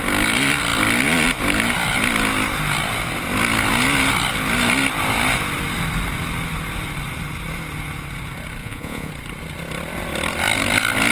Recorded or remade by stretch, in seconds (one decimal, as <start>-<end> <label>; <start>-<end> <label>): 0.0-8.6 recorded; 8.6-9.1 remade; 9.1-11.1 recorded